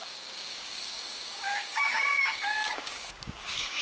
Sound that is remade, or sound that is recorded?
remade